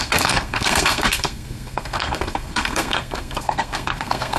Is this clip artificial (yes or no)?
yes